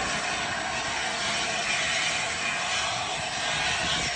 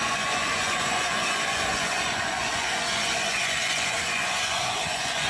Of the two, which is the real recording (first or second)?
first